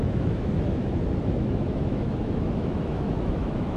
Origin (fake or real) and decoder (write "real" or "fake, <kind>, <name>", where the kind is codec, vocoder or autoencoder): fake, autoencoder, DAC-VAE